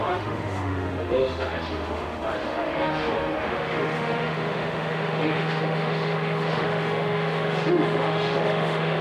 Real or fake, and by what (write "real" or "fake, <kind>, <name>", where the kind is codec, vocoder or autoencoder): fake, autoencoder, DAC-VAE